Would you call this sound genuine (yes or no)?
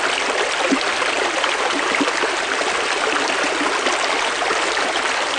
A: yes